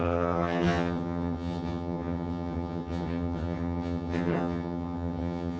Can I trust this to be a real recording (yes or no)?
no